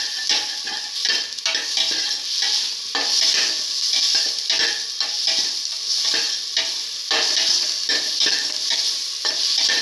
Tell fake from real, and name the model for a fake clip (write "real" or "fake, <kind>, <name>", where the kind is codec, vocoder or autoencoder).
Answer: real